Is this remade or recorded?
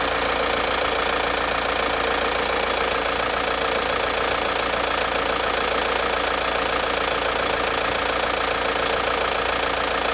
recorded